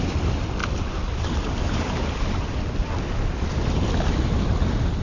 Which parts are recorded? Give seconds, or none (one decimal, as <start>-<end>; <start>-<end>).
0.0-5.0